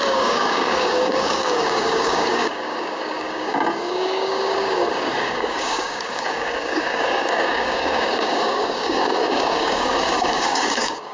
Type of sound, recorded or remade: remade